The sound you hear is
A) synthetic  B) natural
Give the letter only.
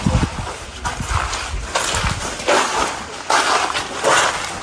B